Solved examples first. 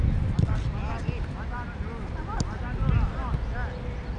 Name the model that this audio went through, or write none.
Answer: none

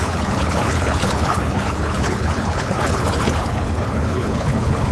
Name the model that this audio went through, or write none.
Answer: codec, HILCodec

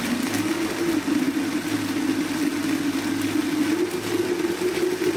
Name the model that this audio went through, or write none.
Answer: none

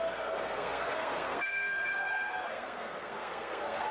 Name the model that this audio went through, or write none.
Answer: codec, SNAC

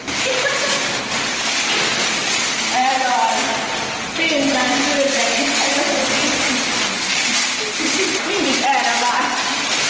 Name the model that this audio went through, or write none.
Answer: vocoder, BigVGAN v2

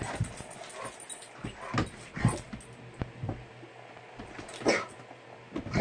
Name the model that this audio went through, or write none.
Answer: none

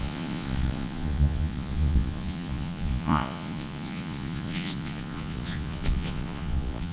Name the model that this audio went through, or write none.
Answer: vocoder, Vocos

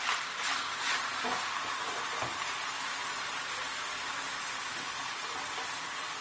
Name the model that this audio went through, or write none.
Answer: none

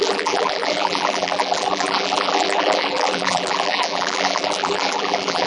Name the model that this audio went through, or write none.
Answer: vocoder, BigVGAN v2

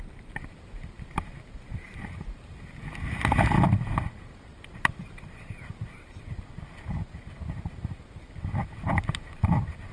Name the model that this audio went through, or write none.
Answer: vocoder, BigVGAN v2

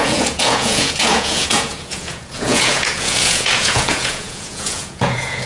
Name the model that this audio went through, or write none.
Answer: vocoder, Vocos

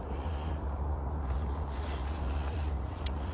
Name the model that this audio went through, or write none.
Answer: vocoder, Vocos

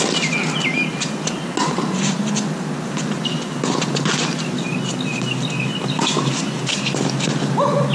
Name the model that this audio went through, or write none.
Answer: none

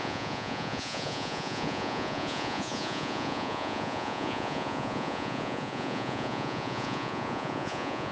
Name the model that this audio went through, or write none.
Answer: vocoder, Vocos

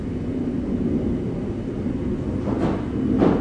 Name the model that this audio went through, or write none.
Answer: none